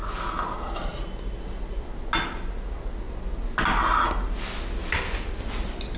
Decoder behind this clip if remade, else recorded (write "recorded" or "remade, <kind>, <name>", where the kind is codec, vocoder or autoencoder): recorded